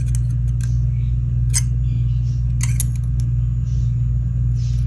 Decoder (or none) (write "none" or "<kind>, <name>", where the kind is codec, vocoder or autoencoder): none